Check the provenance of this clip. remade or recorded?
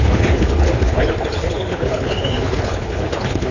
remade